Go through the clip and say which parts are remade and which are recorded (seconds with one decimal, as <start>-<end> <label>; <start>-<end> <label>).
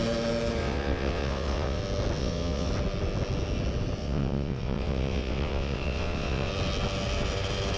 0.0-0.6 recorded; 0.6-1.8 remade; 1.8-2.2 recorded; 2.2-2.7 remade; 2.7-4.0 recorded; 4.0-6.5 remade; 6.5-7.8 recorded